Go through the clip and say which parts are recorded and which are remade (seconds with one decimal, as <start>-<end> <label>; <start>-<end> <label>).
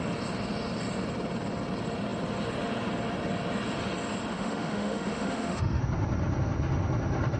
0.0-4.3 recorded; 4.3-5.8 remade; 5.8-7.4 recorded